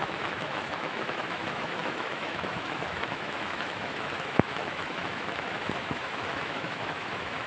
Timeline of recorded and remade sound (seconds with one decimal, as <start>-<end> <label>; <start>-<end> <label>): 0.0-7.5 remade

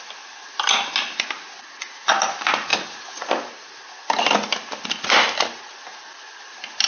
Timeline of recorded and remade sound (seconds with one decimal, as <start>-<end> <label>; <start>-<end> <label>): 0.0-2.7 recorded; 2.7-3.3 remade; 3.3-6.9 recorded

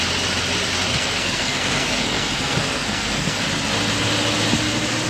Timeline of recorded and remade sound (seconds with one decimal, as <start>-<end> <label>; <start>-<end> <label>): 0.0-0.9 recorded; 0.9-3.4 remade; 3.4-5.1 recorded